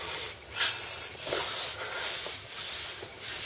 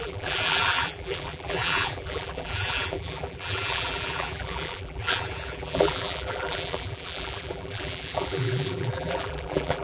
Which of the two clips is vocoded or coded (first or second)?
second